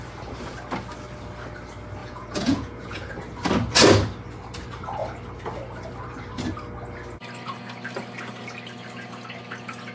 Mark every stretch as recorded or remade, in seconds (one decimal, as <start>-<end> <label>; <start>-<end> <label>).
0.0-2.0 recorded; 2.0-3.1 remade; 3.1-9.9 recorded